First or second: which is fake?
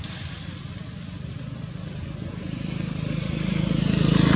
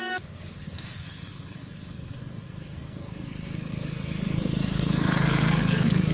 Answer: second